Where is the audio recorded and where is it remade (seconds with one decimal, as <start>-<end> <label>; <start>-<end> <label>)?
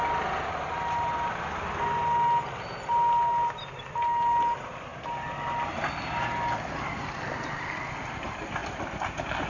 0.0-9.5 recorded